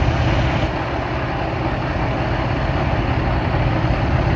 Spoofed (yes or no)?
no